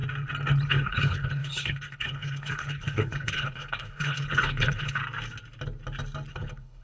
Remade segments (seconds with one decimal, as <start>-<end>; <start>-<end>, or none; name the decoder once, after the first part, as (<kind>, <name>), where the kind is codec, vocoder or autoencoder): 0.7-5.0 (codec, HILCodec); 6.3-6.8